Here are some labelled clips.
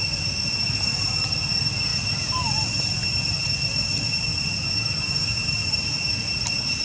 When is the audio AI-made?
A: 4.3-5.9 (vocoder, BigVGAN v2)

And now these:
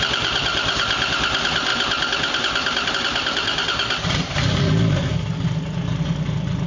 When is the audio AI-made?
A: 0.0-1.7 (vocoder, BigVGAN v2); 2.9-6.7

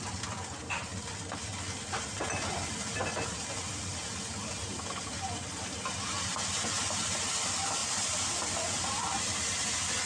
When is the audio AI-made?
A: none